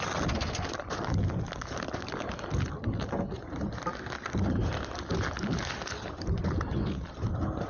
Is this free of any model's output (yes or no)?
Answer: yes